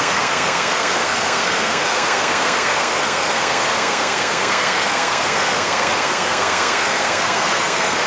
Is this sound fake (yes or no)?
yes